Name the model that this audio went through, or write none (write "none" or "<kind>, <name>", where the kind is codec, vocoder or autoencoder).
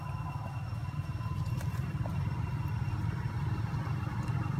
none